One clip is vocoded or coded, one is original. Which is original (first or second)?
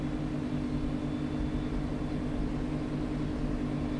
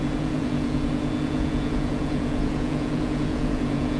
first